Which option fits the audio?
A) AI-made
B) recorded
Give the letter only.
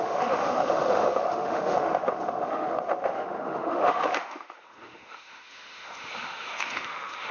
A